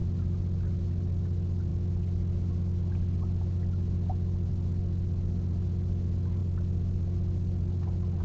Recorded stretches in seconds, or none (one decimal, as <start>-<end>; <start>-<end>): 0.0-8.2